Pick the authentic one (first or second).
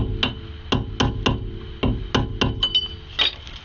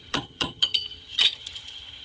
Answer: first